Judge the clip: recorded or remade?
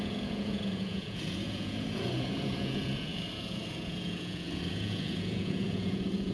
remade